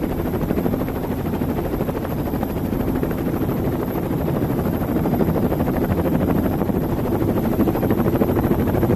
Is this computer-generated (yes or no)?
yes